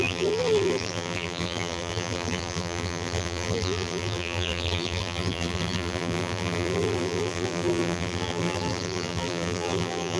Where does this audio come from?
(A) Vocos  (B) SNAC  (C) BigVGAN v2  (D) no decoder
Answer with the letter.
C